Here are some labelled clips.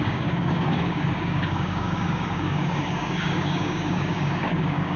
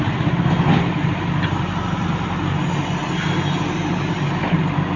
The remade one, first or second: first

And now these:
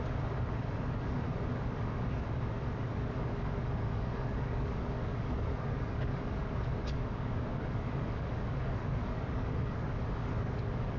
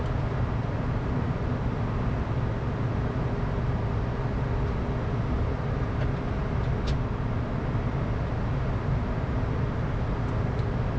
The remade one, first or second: first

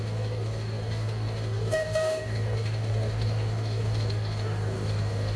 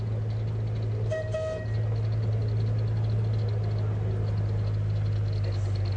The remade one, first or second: first